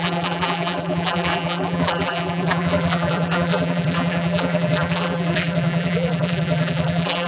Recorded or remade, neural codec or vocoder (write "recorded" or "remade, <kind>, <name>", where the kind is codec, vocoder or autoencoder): remade, vocoder, BigVGAN v2